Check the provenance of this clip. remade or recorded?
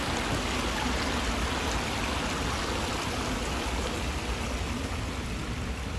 recorded